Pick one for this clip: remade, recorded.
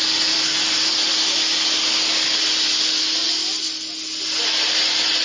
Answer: recorded